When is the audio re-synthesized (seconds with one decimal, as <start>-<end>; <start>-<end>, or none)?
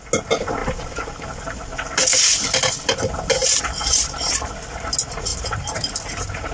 0.6-4.5; 5.3-6.5